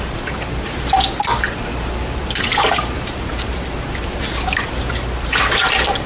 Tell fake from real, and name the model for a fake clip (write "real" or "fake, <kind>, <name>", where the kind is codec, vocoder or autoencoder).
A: real